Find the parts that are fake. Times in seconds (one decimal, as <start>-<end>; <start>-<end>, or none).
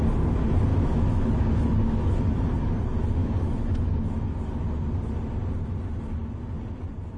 0.7-2.4; 3.2-4.2